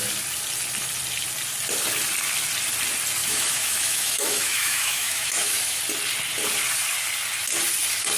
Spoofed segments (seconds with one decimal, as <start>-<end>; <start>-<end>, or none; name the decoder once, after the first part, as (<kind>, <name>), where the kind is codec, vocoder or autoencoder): 3.2-5.8 (autoencoder, DAC-VAE)